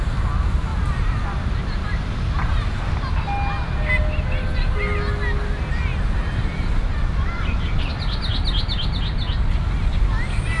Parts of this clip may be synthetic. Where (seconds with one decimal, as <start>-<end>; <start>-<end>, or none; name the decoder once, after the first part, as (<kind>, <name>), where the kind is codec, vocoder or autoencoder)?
0.7-2.8 (vocoder, BigVGAN v2); 5.9-7.4